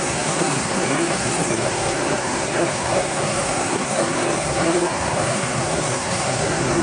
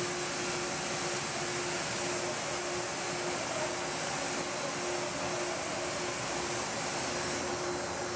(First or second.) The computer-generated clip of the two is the first